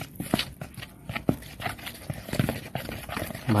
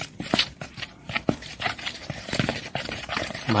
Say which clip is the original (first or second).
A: first